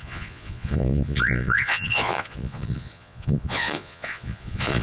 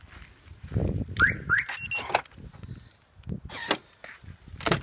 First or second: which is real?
second